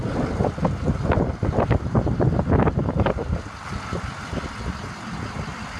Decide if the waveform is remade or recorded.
recorded